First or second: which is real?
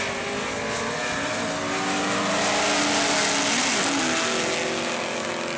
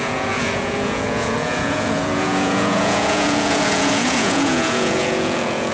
first